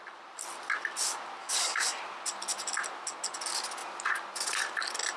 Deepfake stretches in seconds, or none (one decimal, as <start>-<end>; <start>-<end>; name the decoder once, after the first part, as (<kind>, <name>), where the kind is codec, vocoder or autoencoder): 1.4-2.0 (codec, DAC)